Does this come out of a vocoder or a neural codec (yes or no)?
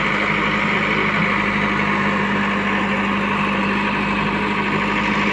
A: no